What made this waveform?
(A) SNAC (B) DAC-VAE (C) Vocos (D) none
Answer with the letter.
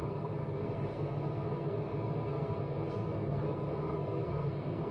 A